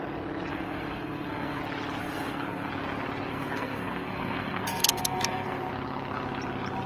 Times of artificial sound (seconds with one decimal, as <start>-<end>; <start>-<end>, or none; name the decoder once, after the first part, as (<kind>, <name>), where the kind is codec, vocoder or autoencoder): 0.5-1.6 (codec, SNAC); 2.0-2.7; 3.3-5.7